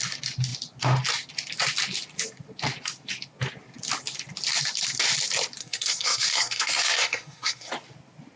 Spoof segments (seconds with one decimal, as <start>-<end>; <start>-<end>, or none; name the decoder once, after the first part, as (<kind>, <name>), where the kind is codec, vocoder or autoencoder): 5.6-7.7 (codec, SNAC)